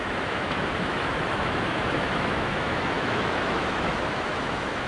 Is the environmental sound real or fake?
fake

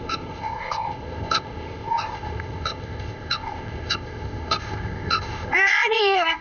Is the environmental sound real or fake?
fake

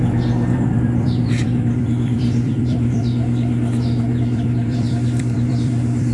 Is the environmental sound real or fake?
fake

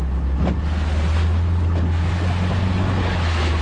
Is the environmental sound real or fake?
real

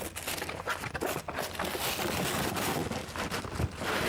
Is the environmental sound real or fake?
real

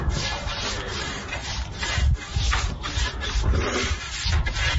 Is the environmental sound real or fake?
real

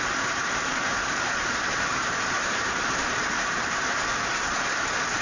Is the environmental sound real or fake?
fake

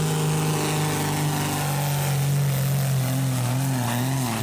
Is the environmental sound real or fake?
real